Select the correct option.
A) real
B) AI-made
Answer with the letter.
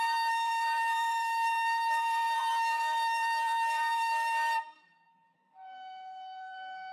B